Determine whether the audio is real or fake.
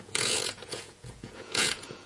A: fake